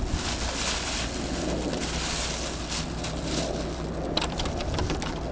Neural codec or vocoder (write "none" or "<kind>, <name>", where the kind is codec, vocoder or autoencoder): none